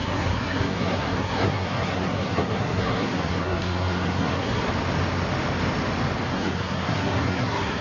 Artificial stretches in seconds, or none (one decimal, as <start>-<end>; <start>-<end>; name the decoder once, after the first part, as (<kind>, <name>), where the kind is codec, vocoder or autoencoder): 0.0-4.7 (codec, SNAC); 6.3-7.8